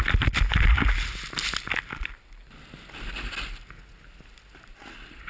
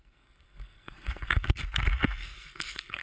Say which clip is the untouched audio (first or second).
first